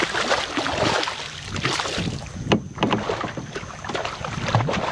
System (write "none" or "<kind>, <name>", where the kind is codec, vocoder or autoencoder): none